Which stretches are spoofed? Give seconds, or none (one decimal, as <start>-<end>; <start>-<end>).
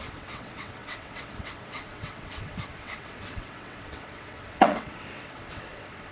0.0-6.1